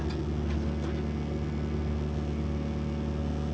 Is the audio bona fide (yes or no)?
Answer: yes